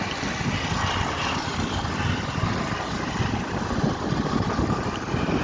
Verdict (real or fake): real